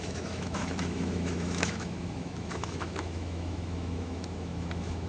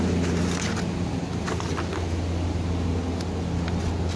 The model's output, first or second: first